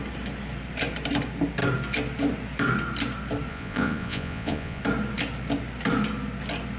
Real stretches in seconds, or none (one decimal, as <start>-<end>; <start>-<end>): 0.0-3.5; 4.8-6.8